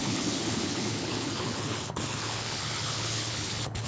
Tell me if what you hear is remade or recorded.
remade